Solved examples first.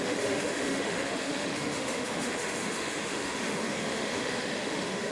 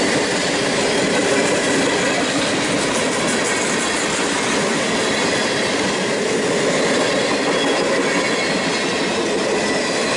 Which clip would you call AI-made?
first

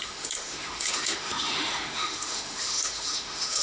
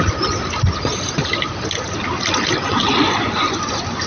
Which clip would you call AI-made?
first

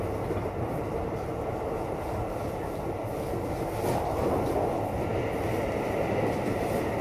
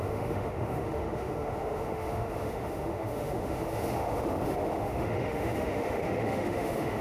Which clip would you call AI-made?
second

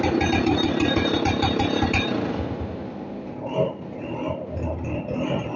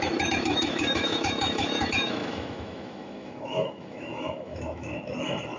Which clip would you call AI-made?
second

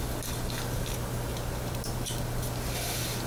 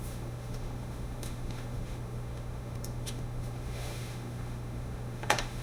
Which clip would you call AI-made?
second